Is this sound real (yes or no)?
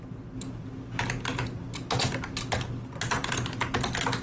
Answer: yes